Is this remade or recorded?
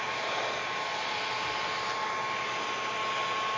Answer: recorded